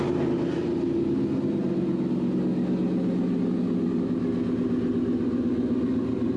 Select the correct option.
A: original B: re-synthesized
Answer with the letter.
A